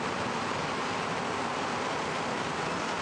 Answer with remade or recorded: recorded